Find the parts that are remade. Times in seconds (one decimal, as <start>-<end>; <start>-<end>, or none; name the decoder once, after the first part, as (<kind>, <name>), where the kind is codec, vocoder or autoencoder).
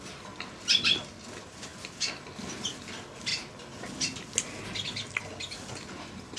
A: none